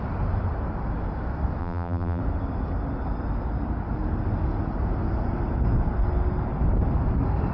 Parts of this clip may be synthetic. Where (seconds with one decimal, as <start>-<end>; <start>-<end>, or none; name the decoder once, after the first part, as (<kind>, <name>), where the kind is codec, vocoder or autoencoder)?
1.6-2.2 (vocoder, BigVGAN v2)